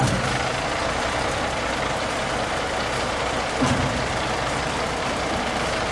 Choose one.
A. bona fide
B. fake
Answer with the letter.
B